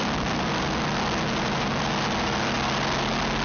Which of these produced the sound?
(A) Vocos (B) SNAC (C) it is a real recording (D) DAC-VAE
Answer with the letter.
C